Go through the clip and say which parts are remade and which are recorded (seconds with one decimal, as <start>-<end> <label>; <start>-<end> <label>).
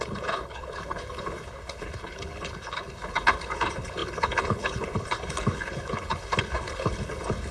0.0-7.5 remade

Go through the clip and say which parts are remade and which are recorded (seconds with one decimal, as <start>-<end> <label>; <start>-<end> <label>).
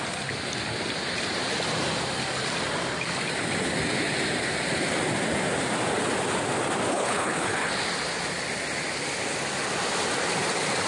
0.0-6.9 recorded; 6.9-7.7 remade; 7.7-10.9 recorded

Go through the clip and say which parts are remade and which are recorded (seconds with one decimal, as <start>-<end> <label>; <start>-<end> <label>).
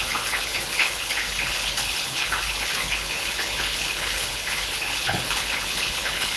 0.0-6.4 remade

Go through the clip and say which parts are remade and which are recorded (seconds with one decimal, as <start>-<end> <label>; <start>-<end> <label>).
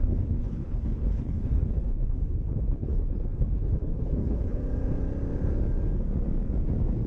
0.0-4.6 remade; 4.6-7.1 recorded